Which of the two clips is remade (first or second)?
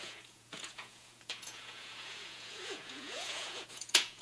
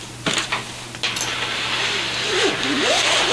first